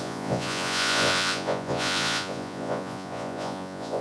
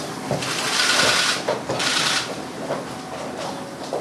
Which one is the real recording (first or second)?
second